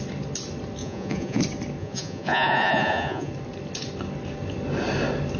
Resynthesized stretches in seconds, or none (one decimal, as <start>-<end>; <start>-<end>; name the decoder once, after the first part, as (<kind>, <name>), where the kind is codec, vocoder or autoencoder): 0.8-1.4 (vocoder, Vocos); 1.8-3.3